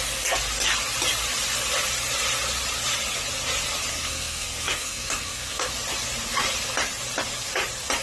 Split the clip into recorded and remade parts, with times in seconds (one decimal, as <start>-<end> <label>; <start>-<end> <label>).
0.0-3.9 recorded; 3.9-5.7 remade; 5.7-8.0 recorded